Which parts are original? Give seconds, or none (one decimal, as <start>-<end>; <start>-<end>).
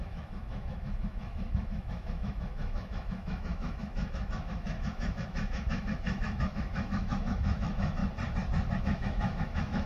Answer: 8.0-8.8